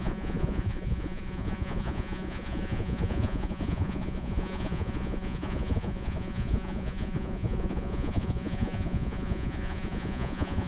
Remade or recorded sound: remade